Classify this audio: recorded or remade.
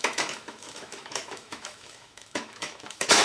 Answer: remade